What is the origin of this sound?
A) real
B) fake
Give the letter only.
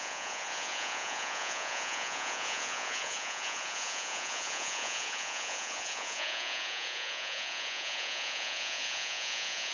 B